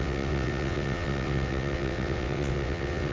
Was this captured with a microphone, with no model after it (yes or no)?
no